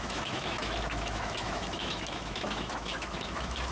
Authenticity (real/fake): fake